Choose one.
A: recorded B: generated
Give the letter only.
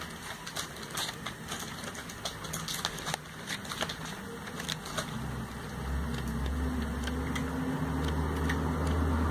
A